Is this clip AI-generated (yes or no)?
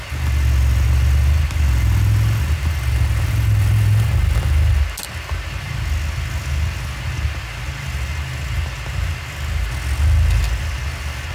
no